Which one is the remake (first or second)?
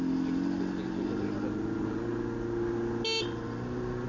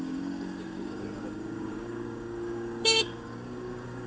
second